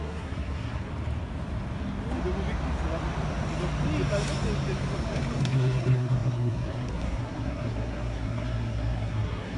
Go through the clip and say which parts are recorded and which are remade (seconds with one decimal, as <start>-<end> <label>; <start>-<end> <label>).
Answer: 0.0-0.9 remade; 0.9-5.4 recorded; 5.4-9.6 remade